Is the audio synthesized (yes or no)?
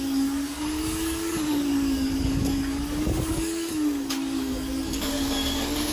yes